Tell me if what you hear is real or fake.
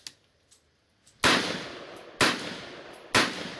real